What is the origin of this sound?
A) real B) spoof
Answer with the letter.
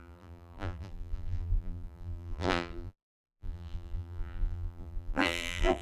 B